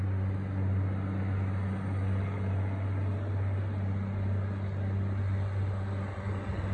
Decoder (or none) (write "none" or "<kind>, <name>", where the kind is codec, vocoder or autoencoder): none